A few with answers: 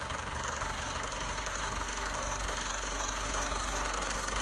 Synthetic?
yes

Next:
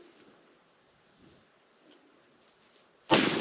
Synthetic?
no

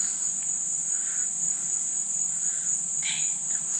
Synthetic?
no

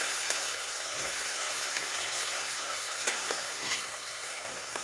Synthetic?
yes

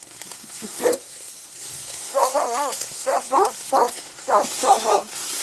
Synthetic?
yes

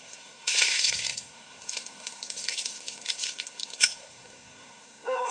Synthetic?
yes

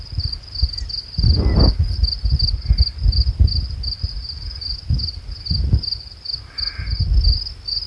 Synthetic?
no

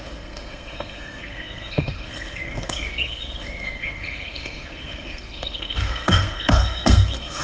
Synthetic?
yes